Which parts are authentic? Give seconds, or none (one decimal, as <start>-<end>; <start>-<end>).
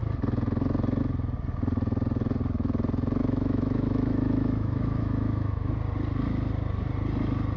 0.0-3.2; 5.7-7.6